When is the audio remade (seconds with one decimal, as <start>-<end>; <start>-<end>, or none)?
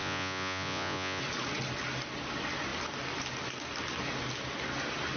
0.0-1.2